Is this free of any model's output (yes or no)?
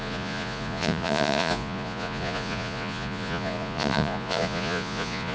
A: no